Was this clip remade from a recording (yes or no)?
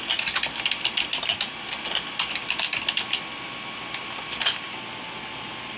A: no